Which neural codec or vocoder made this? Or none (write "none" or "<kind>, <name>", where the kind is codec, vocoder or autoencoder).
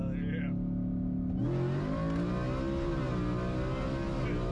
none